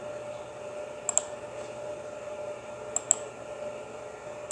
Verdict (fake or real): real